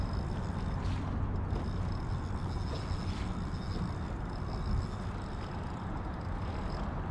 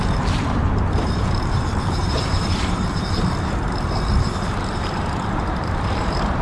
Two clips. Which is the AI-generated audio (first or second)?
second